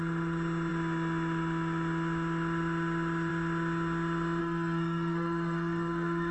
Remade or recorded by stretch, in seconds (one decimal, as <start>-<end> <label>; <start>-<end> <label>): 0.0-4.4 recorded; 4.4-6.3 remade